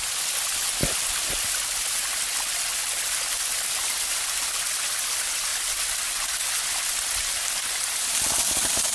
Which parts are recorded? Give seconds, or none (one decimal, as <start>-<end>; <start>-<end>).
0.0-8.9